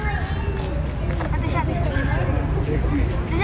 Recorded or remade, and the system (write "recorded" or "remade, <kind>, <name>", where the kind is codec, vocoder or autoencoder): recorded